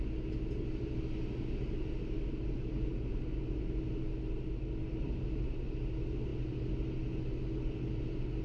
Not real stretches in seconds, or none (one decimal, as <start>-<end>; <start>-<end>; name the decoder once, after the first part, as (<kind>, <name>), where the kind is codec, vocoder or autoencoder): none